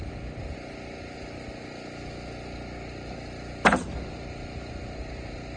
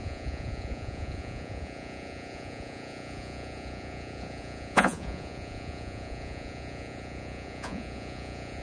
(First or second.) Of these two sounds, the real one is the first